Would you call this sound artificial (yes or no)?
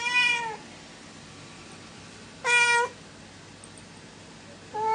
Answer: no